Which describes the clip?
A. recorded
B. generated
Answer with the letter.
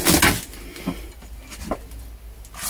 A